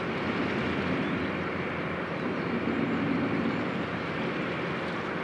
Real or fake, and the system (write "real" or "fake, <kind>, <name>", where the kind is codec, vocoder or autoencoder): real